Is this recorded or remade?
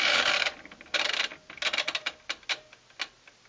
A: recorded